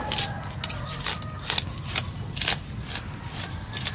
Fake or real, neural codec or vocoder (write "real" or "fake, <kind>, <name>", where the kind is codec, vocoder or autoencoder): real